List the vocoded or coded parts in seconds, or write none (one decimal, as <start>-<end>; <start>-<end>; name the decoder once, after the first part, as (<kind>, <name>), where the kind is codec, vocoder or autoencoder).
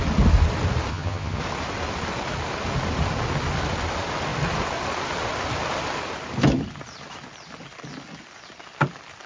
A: 0.9-1.4 (vocoder, HiFi-GAN)